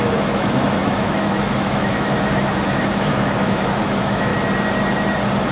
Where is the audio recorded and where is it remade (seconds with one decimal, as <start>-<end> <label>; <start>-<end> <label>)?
0.0-4.3 remade; 4.3-5.5 recorded

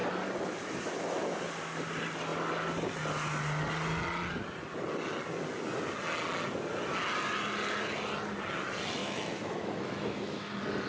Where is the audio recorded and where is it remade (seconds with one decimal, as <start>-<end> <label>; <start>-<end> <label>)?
0.0-9.0 recorded; 9.0-10.5 remade; 10.5-10.9 recorded